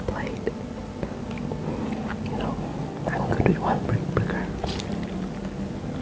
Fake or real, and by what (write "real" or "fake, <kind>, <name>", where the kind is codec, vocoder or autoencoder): real